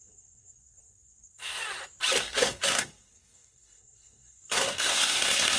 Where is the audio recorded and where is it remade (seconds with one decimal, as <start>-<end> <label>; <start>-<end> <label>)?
0.0-1.6 remade; 1.6-2.2 recorded; 2.2-5.6 remade

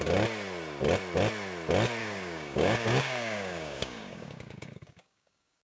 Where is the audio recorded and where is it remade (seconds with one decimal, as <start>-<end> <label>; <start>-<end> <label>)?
0.0-2.0 recorded; 2.0-5.7 remade